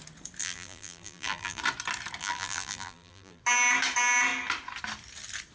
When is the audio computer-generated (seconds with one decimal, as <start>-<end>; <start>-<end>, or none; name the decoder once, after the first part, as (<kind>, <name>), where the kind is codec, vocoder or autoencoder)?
0.4-1.6 (vocoder, BigVGAN v2); 2.2-3.4